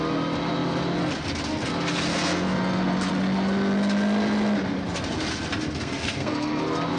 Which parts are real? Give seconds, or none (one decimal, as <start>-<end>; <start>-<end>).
0.0-2.1; 3.1-5.8; 6.6-7.0